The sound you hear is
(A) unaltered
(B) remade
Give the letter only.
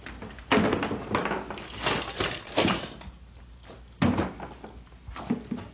A